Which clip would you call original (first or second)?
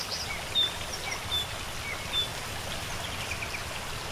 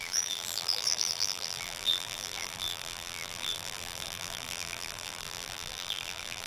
first